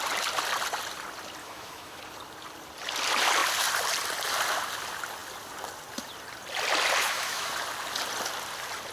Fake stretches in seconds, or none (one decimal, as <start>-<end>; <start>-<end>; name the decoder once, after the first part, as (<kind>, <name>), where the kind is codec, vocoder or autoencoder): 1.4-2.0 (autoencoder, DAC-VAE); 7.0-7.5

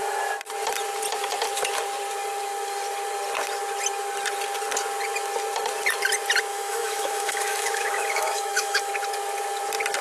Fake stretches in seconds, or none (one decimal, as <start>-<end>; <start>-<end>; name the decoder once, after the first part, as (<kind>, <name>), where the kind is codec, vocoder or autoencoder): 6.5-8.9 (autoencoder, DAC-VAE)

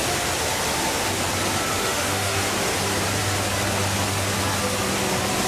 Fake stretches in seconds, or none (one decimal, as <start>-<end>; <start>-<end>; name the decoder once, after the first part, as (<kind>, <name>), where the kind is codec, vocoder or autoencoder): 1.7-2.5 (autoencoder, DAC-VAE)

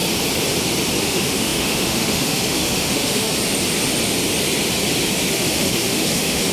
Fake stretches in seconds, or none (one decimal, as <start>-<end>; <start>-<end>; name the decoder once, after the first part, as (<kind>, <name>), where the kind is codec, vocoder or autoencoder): 1.0-3.3 (autoencoder, DAC-VAE); 5.3-6.5

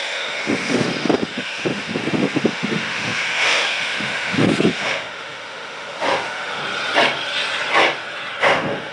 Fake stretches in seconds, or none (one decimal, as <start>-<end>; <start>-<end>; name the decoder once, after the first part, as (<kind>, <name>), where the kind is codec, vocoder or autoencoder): 0.0-6.6 (autoencoder, DAC-VAE); 8.4-8.9

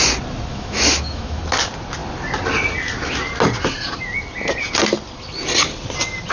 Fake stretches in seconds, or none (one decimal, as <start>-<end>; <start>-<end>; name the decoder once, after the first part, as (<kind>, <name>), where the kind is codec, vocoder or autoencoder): 0.5-1.4 (autoencoder, DAC-VAE)